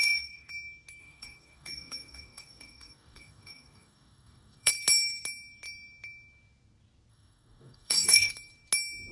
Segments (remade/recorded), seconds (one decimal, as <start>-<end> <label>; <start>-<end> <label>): 0.0-0.5 remade; 0.5-1.0 recorded; 1.0-4.7 remade; 4.7-7.1 recorded; 7.1-8.3 remade; 8.3-9.1 recorded

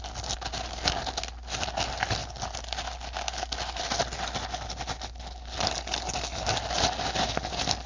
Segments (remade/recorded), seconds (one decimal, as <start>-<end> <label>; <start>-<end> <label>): 0.0-7.9 recorded

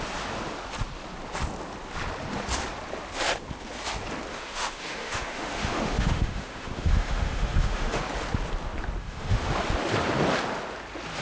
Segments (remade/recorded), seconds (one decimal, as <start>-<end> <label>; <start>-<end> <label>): 0.0-4.3 recorded; 4.3-8.0 remade; 8.0-9.0 recorded; 9.0-9.5 remade; 9.5-11.2 recorded

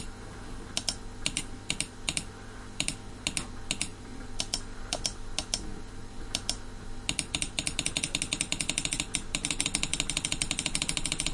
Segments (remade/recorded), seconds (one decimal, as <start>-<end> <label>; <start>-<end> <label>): 0.0-11.3 recorded

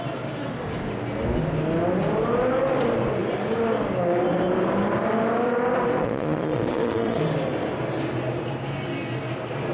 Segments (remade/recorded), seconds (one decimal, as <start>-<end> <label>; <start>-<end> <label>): 0.0-6.0 recorded; 6.0-7.2 remade; 7.2-9.7 recorded

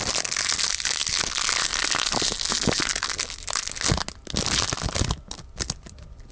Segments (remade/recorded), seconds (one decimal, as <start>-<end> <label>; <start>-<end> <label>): 0.0-6.3 recorded